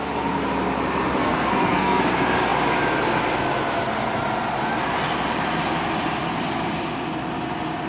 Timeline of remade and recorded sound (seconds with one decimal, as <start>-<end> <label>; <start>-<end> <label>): 0.0-1.2 recorded; 1.2-2.0 remade; 2.0-7.9 recorded